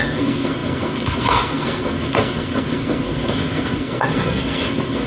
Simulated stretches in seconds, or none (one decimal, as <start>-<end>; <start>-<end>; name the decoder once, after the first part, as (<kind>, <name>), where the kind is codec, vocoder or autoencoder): 0.0-5.1 (codec, SNAC)